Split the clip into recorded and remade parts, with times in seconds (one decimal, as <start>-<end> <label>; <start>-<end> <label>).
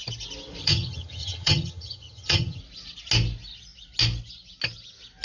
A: 0.0-0.6 recorded; 0.6-2.6 remade; 2.6-5.2 recorded